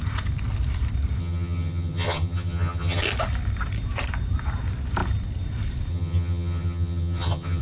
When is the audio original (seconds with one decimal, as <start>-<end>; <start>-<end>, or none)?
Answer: 0.0-1.2; 3.0-5.9